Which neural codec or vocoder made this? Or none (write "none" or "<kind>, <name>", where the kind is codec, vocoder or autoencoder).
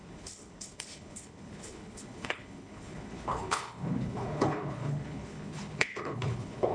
codec, HILCodec